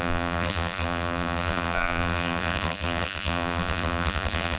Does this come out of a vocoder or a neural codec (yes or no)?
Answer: yes